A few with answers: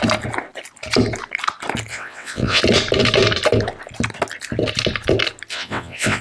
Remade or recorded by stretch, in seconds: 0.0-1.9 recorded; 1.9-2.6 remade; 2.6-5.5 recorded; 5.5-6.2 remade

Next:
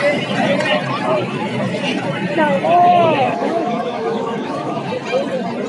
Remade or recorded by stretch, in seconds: 0.0-2.9 recorded; 2.9-4.9 remade; 4.9-5.7 recorded

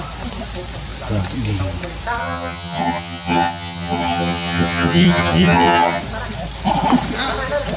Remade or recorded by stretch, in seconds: 0.0-2.2 recorded; 2.2-6.0 remade; 6.0-7.8 recorded

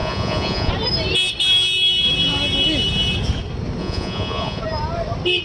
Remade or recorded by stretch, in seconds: 0.0-0.7 remade; 0.7-3.8 recorded; 3.8-4.6 remade; 4.6-5.4 recorded

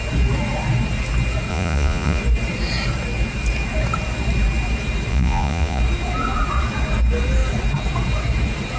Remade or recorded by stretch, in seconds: 0.0-1.5 recorded; 1.5-2.2 remade; 2.2-5.1 recorded; 5.1-5.8 remade; 5.8-8.8 recorded

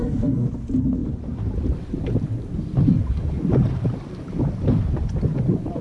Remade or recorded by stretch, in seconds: 0.0-0.5 remade; 0.5-5.8 recorded

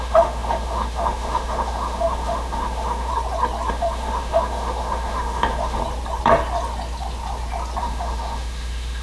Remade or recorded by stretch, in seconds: 0.0-3.1 remade; 3.1-3.7 recorded; 3.7-5.8 remade; 5.8-7.8 recorded; 7.8-9.0 remade